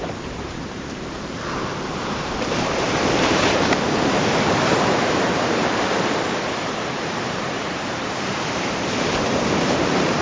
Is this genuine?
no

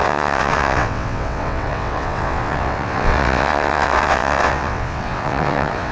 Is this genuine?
no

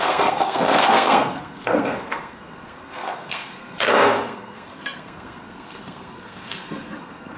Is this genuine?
no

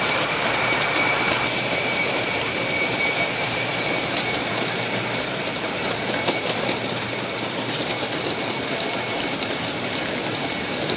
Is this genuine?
no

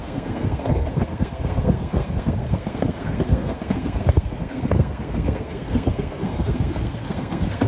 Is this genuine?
no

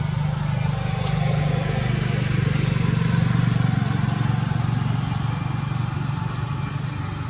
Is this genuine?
yes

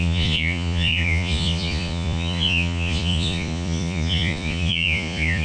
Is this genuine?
no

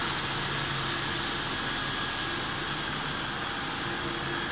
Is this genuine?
yes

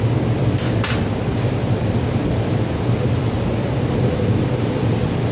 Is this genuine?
yes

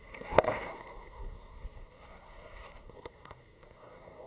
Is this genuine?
no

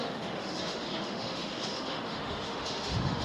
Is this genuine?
no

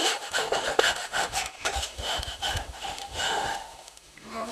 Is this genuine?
no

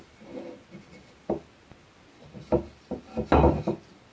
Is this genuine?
yes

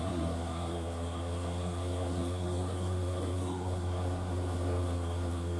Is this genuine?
no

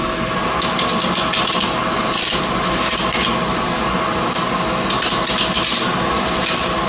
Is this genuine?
yes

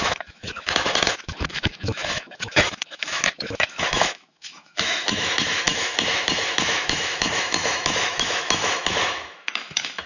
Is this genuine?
no